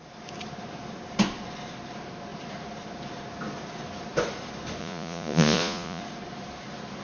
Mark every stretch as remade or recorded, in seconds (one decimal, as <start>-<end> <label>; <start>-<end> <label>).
0.0-4.8 recorded; 4.8-6.0 remade; 6.0-7.0 recorded